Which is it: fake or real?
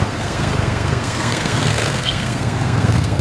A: fake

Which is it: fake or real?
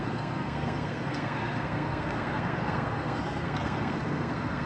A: fake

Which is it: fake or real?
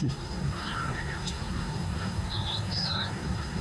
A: fake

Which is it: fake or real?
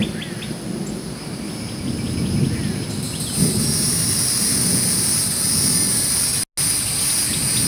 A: real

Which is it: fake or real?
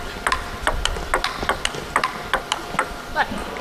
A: real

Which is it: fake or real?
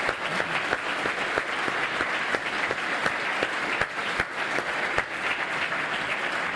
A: real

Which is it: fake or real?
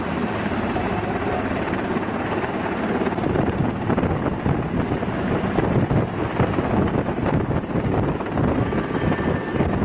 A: real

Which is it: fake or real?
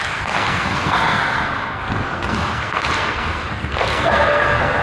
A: fake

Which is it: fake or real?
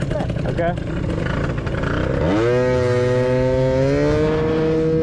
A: real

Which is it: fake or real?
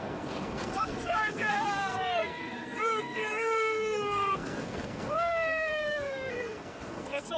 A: fake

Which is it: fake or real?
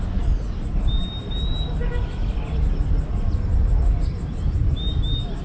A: real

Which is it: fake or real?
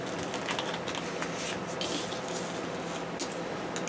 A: real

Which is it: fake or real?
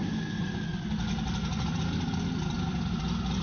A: real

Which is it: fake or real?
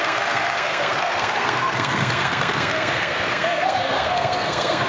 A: fake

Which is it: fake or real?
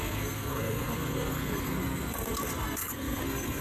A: fake